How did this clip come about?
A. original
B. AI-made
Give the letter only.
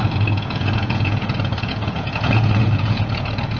B